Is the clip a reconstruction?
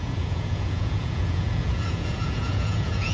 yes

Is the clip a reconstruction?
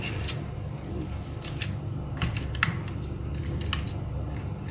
no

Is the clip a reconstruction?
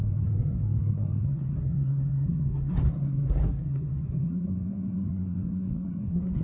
yes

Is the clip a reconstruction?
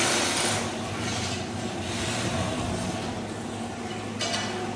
no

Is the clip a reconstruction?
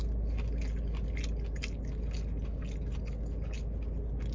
no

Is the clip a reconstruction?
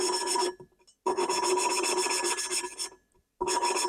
no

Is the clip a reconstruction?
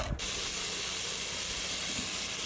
no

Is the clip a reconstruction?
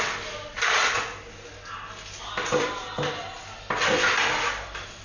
no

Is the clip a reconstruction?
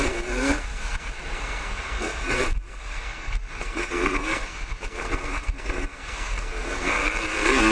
yes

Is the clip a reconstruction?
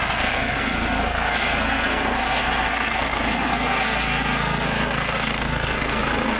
yes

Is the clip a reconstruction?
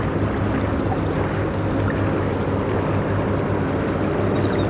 no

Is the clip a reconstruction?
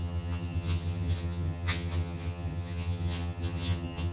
yes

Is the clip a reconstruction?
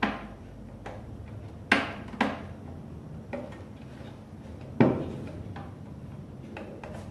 no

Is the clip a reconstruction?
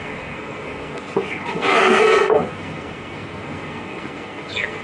yes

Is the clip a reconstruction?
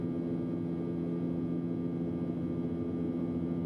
no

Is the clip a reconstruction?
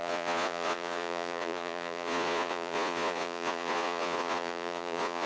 yes